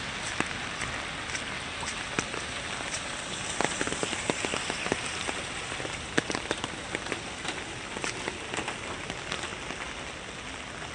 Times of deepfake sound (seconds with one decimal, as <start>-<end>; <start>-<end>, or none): none